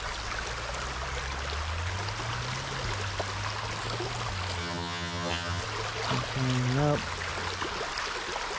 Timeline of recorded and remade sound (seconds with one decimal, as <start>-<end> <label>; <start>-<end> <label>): 0.0-4.6 recorded; 4.6-5.6 remade; 5.6-8.6 recorded